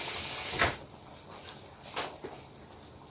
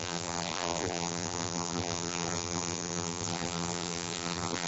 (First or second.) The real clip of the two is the first